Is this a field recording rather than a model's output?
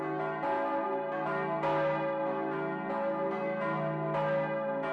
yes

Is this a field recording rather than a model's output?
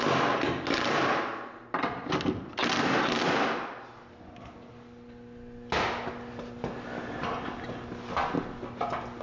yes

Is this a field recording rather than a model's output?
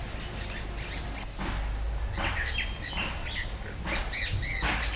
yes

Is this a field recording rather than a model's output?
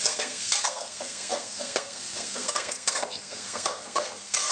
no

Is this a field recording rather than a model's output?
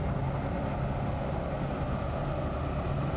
yes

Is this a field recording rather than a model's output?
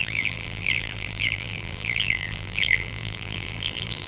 no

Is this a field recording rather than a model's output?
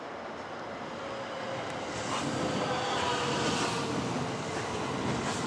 yes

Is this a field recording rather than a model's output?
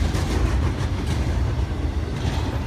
yes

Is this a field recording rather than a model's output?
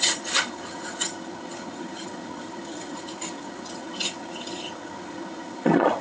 no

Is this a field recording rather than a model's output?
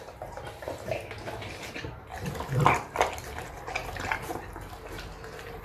yes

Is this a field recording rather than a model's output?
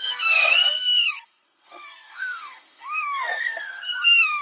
no